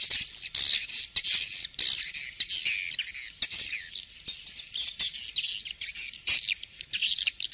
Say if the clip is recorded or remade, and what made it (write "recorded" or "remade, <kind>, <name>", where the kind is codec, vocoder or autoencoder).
recorded